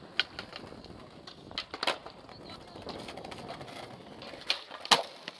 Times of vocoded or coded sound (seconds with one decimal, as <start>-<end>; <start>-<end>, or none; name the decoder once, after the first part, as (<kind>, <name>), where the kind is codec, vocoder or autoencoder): none